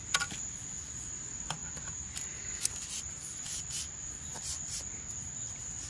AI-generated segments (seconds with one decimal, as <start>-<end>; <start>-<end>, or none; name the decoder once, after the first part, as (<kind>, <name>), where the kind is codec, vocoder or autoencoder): none